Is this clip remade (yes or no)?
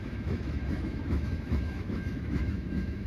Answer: yes